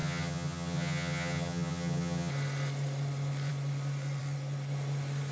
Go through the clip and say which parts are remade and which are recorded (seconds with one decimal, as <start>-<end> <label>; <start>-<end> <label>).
0.0-2.3 remade; 2.3-5.3 recorded